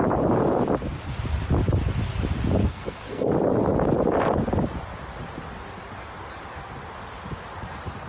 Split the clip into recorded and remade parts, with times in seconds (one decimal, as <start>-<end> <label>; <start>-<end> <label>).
0.0-2.6 recorded; 2.6-3.3 remade; 3.3-8.1 recorded